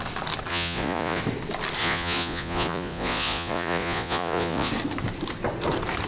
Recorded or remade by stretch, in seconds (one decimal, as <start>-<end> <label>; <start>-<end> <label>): 0.0-0.5 recorded; 0.5-1.2 remade; 1.2-1.8 recorded; 1.8-4.7 remade; 4.7-6.1 recorded